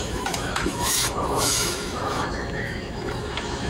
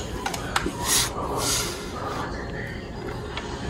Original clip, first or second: second